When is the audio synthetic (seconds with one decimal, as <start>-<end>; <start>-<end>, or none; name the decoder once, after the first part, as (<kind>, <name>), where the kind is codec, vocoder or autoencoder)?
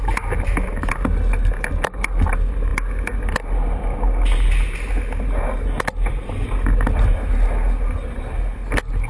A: none